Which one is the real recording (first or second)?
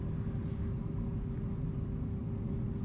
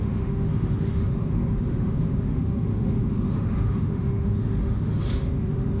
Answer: first